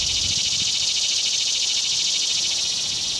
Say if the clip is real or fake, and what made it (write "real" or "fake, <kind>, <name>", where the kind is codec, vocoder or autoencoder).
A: real